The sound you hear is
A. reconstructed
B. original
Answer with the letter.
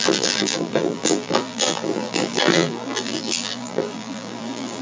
A